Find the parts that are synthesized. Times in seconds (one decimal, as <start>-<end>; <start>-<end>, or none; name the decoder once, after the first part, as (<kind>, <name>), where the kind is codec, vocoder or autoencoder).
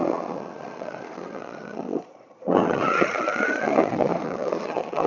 0.0-5.1 (vocoder, Vocos)